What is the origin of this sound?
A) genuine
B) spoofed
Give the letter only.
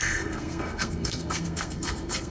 B